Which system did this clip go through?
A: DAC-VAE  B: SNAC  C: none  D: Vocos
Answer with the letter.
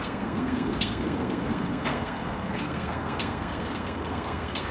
B